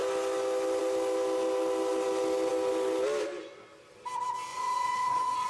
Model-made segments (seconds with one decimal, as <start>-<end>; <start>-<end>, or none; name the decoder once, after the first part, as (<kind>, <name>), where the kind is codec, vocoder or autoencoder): 4.5-5.5 (vocoder, Vocos)